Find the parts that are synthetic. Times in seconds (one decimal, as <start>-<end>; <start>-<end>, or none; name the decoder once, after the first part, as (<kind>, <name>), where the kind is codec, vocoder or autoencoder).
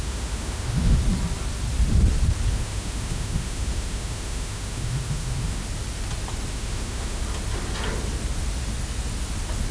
0.0-1.0 (autoencoder, DAC-VAE); 2.5-5.6; 6.5-7.2